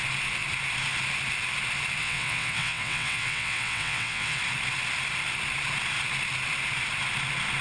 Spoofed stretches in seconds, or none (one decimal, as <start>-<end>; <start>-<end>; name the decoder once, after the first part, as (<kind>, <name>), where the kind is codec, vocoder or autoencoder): 2.0-4.4 (vocoder, WaveNeXt)